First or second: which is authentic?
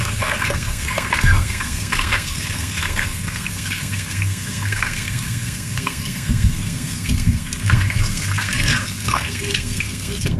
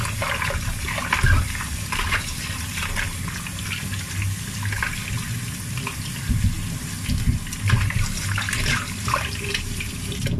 second